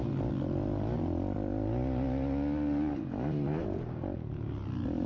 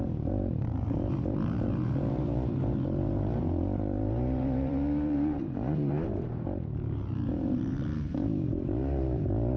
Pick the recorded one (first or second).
first